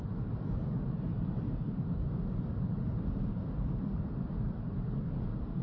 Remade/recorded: recorded